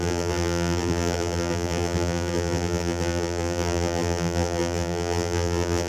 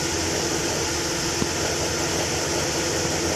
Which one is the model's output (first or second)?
first